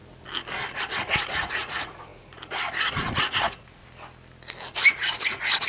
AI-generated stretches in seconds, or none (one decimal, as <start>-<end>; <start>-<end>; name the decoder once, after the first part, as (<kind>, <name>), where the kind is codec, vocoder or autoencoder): 0.8-3.8 (vocoder, Vocos); 4.9-5.7